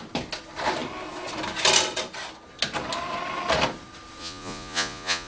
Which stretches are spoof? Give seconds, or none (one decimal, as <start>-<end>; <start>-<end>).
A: 4.2-5.3